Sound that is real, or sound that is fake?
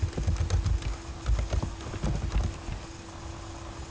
real